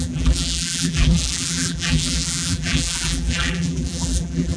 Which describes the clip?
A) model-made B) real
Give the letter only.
A